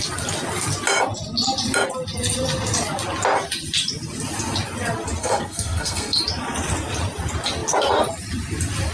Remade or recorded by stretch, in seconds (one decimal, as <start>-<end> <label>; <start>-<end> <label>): 0.0-5.2 recorded; 5.2-6.2 remade; 6.2-8.9 recorded